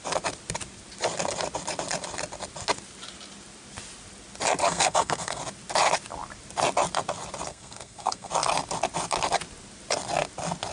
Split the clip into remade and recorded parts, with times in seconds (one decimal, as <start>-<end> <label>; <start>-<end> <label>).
0.0-4.6 recorded; 4.6-5.4 remade; 5.4-7.5 recorded; 7.5-8.3 remade; 8.3-10.7 recorded